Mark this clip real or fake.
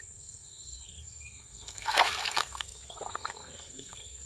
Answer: fake